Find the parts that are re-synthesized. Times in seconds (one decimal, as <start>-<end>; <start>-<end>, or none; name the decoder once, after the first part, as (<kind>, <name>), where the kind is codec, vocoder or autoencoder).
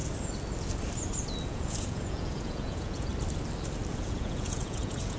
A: 1.5-3.1 (vocoder, Vocos); 3.9-5.2